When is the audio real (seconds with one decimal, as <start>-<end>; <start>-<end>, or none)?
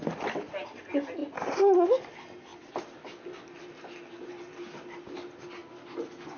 0.0-6.4